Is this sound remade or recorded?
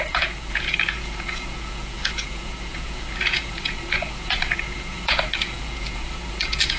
remade